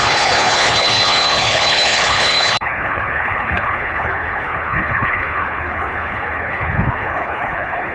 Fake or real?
fake